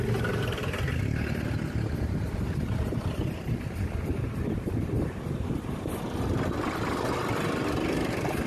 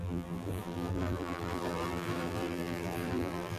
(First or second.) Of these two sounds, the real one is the first